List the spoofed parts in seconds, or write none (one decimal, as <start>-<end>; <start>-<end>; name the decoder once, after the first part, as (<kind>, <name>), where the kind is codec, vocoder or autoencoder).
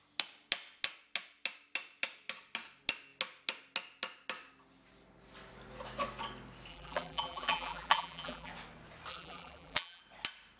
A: 6.7-8.5 (vocoder, BigVGAN v2); 9.1-10.0